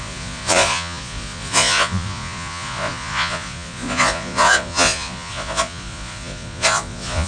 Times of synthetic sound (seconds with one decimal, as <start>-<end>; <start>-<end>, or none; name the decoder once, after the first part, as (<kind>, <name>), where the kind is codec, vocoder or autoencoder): 0.0-7.3 (vocoder, Vocos)